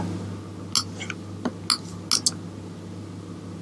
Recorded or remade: recorded